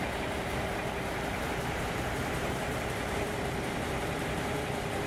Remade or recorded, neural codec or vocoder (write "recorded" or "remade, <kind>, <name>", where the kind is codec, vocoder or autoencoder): remade, vocoder, BigVGAN v2